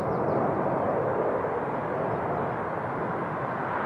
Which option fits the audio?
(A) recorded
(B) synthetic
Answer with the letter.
A